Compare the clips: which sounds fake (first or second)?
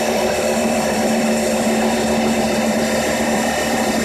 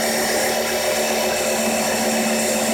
first